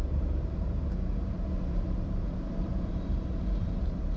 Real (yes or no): no